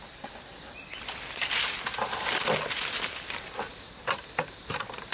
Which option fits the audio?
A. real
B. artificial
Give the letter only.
A